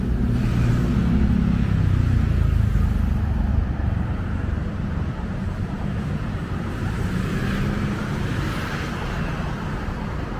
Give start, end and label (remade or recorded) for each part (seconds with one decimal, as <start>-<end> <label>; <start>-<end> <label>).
0.0-3.5 recorded; 3.5-7.1 remade; 7.1-10.4 recorded